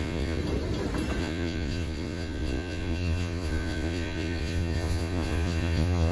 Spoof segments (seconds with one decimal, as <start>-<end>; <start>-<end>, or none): 0.0-0.4; 1.2-6.1